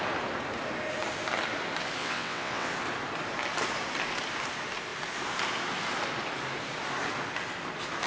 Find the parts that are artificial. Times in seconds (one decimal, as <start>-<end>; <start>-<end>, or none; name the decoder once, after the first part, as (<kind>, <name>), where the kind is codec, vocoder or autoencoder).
2.0-2.7 (vocoder, WaveNeXt)